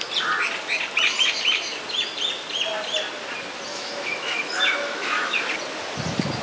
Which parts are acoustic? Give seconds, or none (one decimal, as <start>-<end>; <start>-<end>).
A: 0.0-3.7; 5.4-6.4